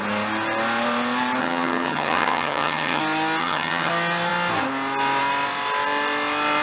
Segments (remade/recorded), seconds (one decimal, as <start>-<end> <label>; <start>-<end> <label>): 0.0-1.4 recorded; 1.4-3.0 remade; 3.0-3.4 recorded; 3.4-3.9 remade; 3.9-6.6 recorded